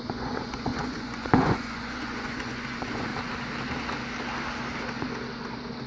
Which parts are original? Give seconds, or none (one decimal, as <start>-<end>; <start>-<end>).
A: 3.1-5.9